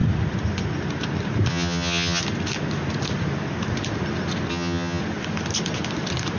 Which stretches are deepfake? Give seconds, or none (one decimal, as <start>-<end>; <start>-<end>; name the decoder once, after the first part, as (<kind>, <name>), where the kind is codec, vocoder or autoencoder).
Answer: 1.5-2.2 (vocoder, HiFi-GAN); 4.5-5.0